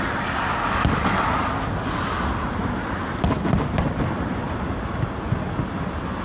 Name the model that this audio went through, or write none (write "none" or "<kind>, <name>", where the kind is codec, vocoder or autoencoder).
none